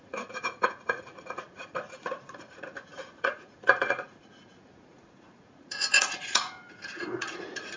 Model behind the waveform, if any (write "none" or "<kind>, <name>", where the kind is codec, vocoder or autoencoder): vocoder, Vocos